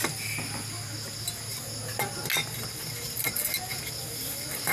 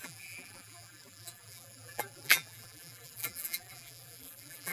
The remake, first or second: second